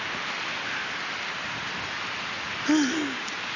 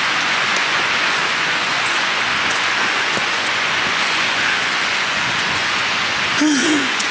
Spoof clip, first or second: second